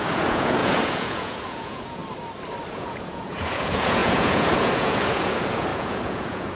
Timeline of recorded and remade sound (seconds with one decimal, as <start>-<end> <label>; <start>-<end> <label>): 0.0-2.0 remade; 2.0-2.7 recorded; 2.7-6.6 remade